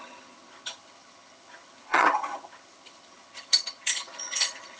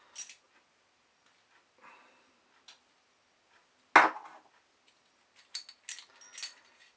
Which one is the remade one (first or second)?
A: first